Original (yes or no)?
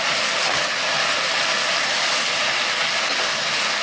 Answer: yes